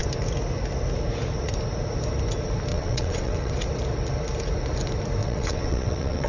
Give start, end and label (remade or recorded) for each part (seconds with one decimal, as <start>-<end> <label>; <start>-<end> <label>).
0.0-2.7 recorded; 2.7-3.5 remade; 3.5-5.2 recorded; 5.2-6.3 remade